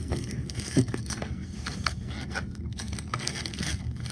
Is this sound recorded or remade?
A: remade